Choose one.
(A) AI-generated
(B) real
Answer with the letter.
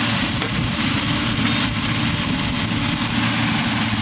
B